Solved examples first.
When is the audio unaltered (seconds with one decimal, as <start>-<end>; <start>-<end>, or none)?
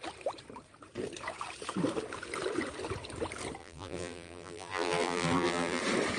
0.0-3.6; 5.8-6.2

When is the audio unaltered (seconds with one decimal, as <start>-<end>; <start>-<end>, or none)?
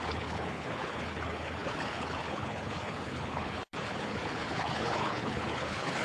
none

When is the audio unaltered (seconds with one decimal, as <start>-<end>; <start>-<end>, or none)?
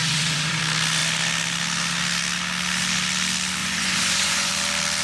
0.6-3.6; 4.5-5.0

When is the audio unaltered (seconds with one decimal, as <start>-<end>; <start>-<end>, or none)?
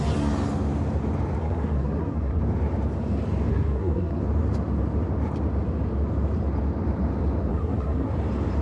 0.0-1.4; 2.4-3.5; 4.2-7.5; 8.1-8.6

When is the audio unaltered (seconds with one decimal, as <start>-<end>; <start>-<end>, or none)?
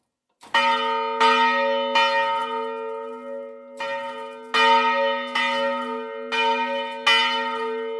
0.0-8.0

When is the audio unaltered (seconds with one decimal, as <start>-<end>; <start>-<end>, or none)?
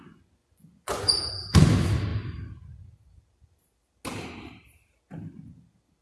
0.0-0.4; 1.3-6.0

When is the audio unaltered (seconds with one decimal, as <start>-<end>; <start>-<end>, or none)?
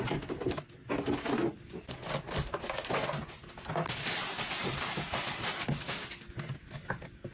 0.0-7.3